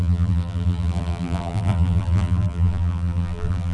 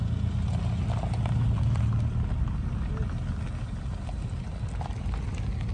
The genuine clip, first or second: second